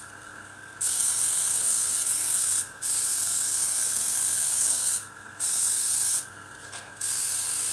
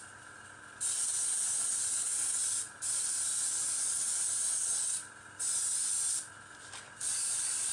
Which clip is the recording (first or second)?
second